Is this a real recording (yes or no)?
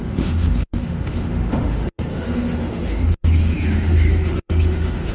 no